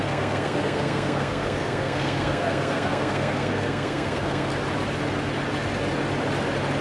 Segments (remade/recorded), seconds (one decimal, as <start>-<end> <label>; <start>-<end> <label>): 0.0-4.5 remade; 4.5-6.8 recorded